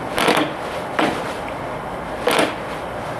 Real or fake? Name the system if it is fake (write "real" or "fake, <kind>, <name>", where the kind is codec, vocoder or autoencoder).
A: real